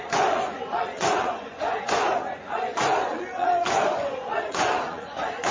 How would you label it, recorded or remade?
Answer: remade